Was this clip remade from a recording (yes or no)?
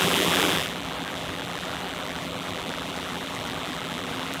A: yes